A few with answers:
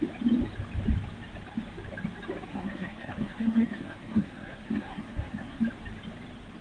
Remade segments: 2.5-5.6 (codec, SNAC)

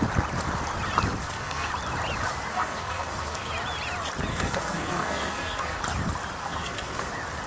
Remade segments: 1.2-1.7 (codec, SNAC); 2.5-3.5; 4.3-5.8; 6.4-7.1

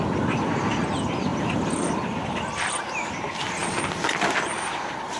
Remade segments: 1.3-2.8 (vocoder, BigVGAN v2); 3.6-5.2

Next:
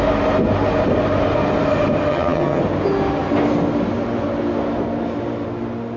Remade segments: 2.1-2.6 (vocoder, HiFi-GAN)

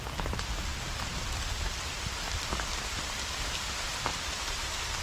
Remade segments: 4.1-5.0 (vocoder, BigVGAN v2)

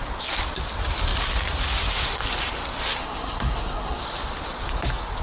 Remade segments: 3.0-4.0 (codec, SNAC)